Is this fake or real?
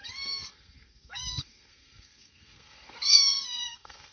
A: fake